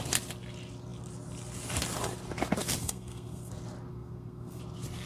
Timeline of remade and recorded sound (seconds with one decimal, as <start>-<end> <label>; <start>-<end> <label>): 0.0-2.8 recorded; 2.8-3.5 remade; 3.5-3.9 recorded; 3.9-4.6 remade; 4.6-5.1 recorded